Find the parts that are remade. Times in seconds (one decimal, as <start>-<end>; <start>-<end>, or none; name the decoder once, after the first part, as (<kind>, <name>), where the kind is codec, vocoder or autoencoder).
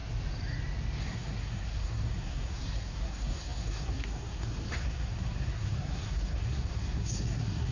1.0-7.7 (codec, SNAC)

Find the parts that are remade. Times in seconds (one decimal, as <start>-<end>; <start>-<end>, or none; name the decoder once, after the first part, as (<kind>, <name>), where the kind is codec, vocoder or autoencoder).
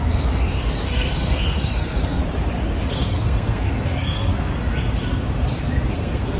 0.0-2.2 (codec, SNAC); 2.9-4.5; 5.9-6.4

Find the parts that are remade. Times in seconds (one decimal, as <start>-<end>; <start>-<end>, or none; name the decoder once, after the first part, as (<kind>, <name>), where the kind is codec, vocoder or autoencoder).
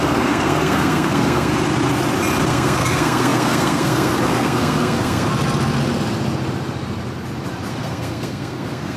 0.0-1.5 (codec, SNAC); 2.5-5.3; 7.7-9.0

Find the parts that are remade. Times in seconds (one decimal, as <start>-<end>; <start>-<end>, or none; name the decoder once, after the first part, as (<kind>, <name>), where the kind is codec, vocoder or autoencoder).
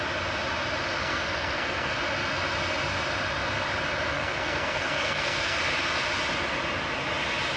1.0-1.9 (codec, SNAC); 4.1-5.6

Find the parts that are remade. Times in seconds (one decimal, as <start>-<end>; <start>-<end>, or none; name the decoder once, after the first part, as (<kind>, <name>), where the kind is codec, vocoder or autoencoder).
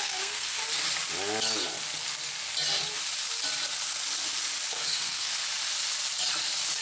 0.0-0.6 (codec, SNAC); 4.7-5.3